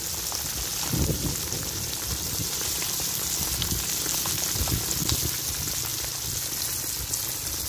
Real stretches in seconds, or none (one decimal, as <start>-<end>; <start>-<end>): 0.0-0.7; 4.6-7.7